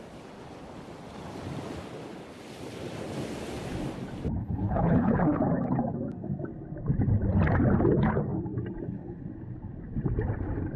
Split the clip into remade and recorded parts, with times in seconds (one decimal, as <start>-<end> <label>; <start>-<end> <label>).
0.0-4.4 recorded; 4.4-5.4 remade; 5.4-10.8 recorded